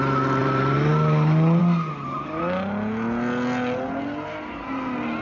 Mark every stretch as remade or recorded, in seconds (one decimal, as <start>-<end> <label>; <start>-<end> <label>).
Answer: 0.0-0.4 recorded; 0.4-0.9 remade; 0.9-5.2 recorded